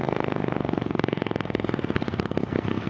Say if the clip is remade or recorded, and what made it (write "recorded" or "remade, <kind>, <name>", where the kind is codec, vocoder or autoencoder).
remade, codec, SNAC